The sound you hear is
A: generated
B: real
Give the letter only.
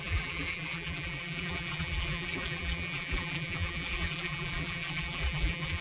A